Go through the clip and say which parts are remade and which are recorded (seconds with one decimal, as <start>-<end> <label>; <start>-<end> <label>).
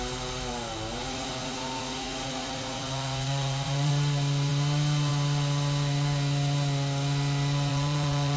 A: 0.0-1.0 recorded; 1.0-3.9 remade; 3.9-7.7 recorded; 7.7-8.4 remade